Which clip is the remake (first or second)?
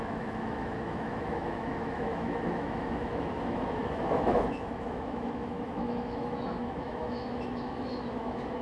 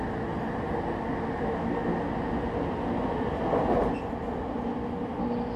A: first